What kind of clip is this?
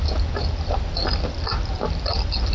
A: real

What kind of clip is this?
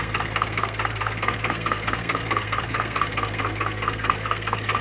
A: fake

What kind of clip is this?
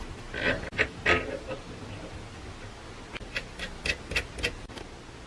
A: real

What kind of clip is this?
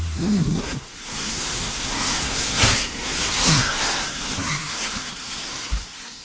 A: fake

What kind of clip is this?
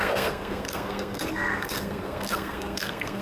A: fake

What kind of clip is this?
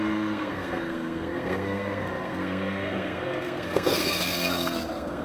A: fake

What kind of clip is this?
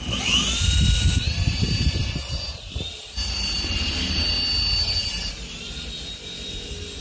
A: real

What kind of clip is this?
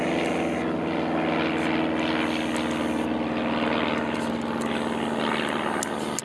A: real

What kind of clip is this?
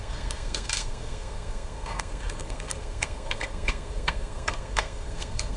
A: fake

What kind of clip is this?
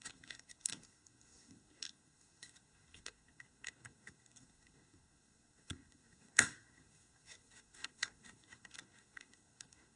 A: fake